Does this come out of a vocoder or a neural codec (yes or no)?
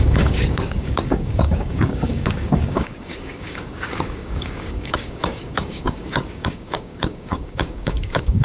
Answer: yes